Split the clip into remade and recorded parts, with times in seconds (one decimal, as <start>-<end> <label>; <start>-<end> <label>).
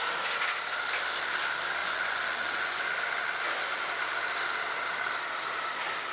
0.0-1.8 recorded; 1.8-2.8 remade; 2.8-6.1 recorded